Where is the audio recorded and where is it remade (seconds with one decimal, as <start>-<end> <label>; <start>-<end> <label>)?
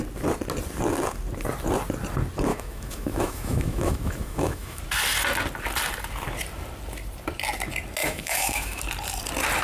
0.0-2.5 recorded; 2.5-4.8 remade; 4.8-8.0 recorded; 8.0-8.8 remade; 8.8-9.6 recorded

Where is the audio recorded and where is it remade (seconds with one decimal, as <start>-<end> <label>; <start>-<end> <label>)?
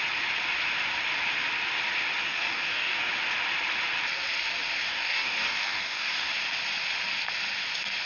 0.0-2.2 recorded; 2.2-3.1 remade; 3.1-4.9 recorded; 4.9-6.3 remade; 6.3-8.1 recorded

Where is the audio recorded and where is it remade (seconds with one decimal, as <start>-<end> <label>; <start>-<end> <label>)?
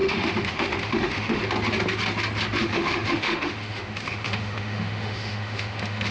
0.0-1.4 remade; 1.4-2.6 recorded; 2.6-6.1 remade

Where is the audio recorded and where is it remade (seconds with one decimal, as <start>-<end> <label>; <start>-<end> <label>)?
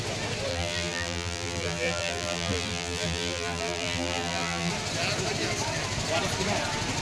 0.0-0.5 recorded; 0.5-4.7 remade; 4.7-7.0 recorded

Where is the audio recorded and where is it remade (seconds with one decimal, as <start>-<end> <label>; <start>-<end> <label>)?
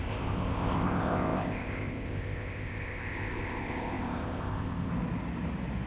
0.0-4.9 remade; 4.9-5.9 recorded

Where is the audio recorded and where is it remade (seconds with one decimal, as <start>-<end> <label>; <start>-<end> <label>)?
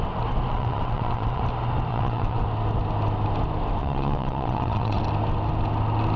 0.0-0.5 recorded; 0.5-1.4 remade; 1.4-1.9 recorded; 1.9-2.4 remade; 2.4-3.8 recorded; 3.8-5.0 remade; 5.0-6.2 recorded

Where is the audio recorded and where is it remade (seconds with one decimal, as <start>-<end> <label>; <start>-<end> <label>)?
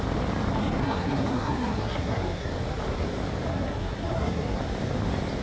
0.0-0.6 recorded; 0.6-2.5 remade; 2.5-3.5 recorded; 3.5-4.6 remade; 4.6-5.4 recorded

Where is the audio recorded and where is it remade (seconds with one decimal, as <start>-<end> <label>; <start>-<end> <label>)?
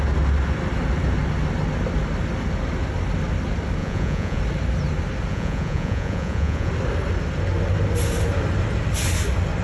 0.0-3.8 recorded; 3.8-4.4 remade; 4.4-5.3 recorded; 5.3-6.7 remade; 6.7-9.6 recorded